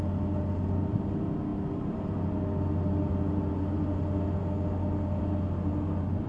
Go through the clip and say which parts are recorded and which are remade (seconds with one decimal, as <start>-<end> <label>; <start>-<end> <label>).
0.0-6.3 recorded